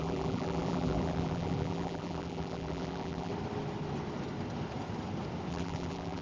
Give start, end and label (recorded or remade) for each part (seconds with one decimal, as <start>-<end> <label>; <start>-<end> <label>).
0.0-3.3 remade; 3.3-5.5 recorded; 5.5-6.2 remade